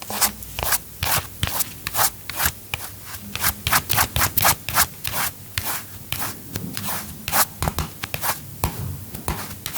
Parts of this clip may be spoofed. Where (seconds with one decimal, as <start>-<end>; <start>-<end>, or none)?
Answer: 0.8-2.5; 5.5-6.8; 8.5-9.2